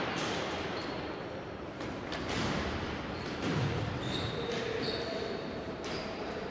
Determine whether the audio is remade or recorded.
remade